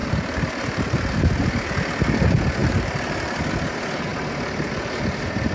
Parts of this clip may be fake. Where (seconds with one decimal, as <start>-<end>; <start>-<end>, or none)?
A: 0.0-1.5; 2.6-3.5